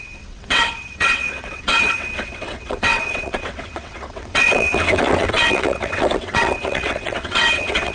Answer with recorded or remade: remade